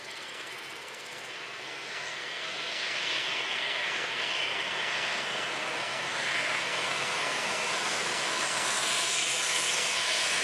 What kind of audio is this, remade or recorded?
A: remade